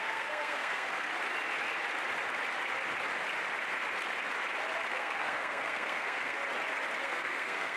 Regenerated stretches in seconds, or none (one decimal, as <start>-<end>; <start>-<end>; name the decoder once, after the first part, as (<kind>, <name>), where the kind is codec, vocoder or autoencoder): 0.0-1.1 (codec, SNAC); 4.9-6.4; 7.0-7.8